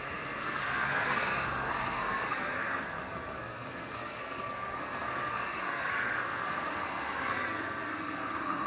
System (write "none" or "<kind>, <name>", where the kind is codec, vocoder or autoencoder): codec, SNAC